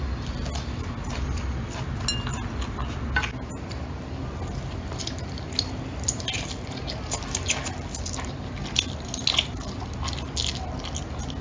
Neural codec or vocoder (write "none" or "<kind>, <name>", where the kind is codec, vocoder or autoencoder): none